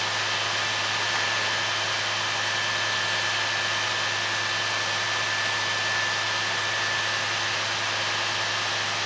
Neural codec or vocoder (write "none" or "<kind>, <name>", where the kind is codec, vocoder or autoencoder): none